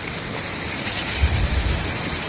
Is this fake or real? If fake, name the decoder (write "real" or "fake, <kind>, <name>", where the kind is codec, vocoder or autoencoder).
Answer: real